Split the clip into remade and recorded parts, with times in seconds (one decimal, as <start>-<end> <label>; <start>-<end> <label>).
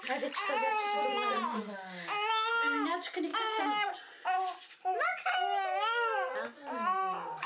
0.0-7.5 recorded